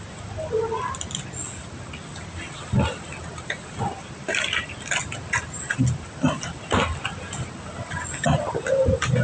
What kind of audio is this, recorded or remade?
recorded